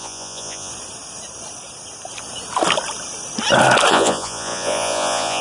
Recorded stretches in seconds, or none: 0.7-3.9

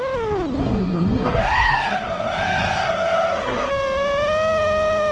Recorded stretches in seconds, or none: 0.0-0.6; 3.7-5.1

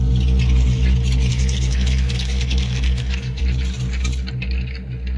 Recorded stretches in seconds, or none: 0.0-1.3; 3.4-5.2

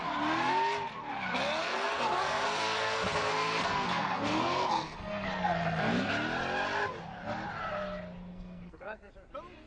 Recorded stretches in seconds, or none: 0.0-1.6; 6.1-8.3; 9.1-9.7

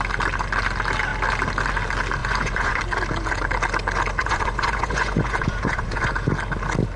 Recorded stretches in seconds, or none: 0.0-2.2; 2.8-4.2; 6.1-7.0